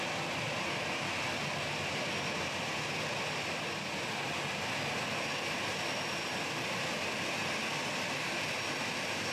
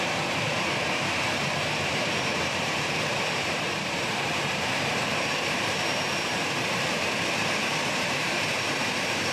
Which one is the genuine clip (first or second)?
first